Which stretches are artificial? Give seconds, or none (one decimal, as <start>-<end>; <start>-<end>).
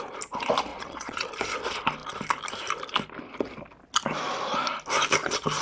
0.7-1.3